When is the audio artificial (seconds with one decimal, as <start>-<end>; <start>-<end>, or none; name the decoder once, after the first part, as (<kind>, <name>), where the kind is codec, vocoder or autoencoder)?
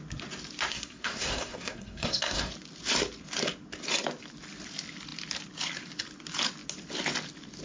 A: 0.7-2.5 (codec, SNAC)